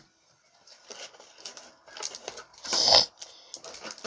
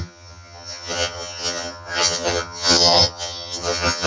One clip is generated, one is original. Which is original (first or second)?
first